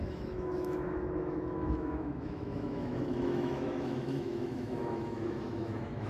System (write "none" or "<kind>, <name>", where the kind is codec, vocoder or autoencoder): autoencoder, DAC-VAE